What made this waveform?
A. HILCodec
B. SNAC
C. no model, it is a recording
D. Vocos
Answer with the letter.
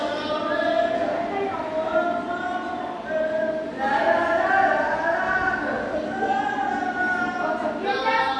C